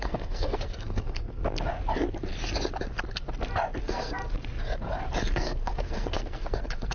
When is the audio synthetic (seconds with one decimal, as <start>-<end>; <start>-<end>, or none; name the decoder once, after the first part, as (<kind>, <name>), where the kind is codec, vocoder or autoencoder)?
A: 0.0-1.4 (codec, SNAC); 3.8-4.2; 5.2-6.9